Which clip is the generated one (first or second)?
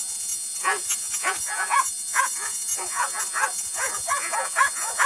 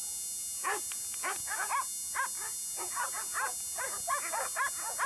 first